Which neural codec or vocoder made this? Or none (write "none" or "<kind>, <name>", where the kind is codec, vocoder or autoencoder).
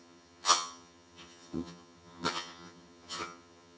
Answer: vocoder, HiFi-GAN